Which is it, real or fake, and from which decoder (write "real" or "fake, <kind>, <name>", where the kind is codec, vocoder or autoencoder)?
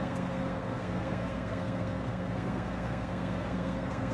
fake, codec, SNAC